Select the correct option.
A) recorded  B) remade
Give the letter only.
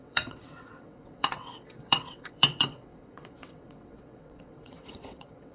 B